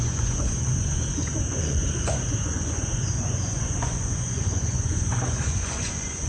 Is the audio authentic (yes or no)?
no